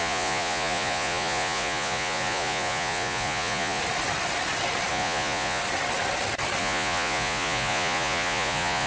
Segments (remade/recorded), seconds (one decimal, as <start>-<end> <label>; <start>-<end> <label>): 0.0-3.8 remade; 3.8-4.9 recorded; 4.9-5.6 remade; 5.6-6.6 recorded; 6.6-8.9 remade